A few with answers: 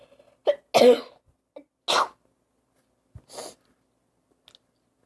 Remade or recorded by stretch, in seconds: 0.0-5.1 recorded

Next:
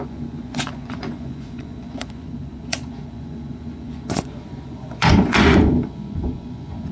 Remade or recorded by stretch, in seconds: 0.0-6.9 remade

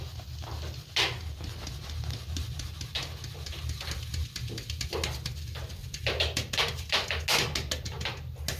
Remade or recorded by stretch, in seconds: 0.0-5.8 recorded; 5.8-7.2 remade; 7.2-8.6 recorded

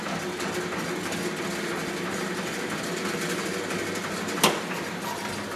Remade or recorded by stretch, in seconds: 0.0-1.8 recorded; 1.8-3.5 remade; 3.5-5.6 recorded

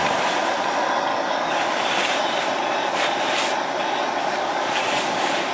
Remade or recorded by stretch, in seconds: 0.0-1.1 recorded; 1.1-1.9 remade; 1.9-4.2 recorded; 4.2-5.5 remade

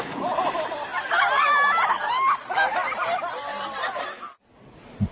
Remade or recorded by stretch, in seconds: 0.0-2.4 recorded; 2.4-3.0 remade; 3.0-5.1 recorded

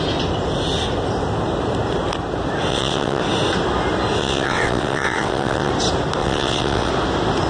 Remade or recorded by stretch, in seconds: 0.0-2.7 recorded; 2.7-3.2 remade; 3.2-4.2 recorded; 4.2-5.7 remade; 5.7-6.2 recorded; 6.2-6.9 remade; 6.9-7.5 recorded

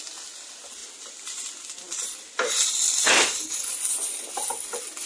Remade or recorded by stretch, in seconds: 0.0-5.1 recorded